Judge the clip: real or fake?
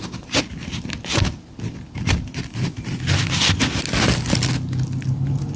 real